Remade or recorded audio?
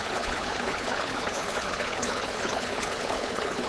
remade